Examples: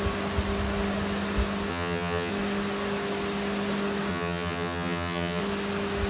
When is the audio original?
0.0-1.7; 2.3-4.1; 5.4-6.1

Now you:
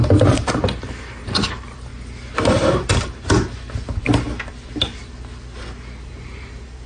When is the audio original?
1.9-6.0

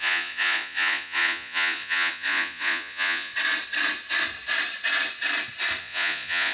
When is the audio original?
3.3-5.8

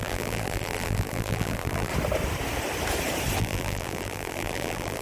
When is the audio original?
1.9-3.4

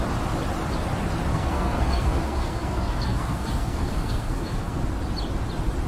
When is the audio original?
0.0-1.3; 4.8-5.9